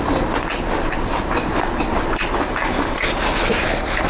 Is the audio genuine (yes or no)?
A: yes